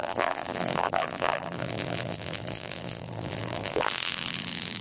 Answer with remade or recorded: remade